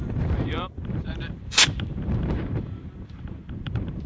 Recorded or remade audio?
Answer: remade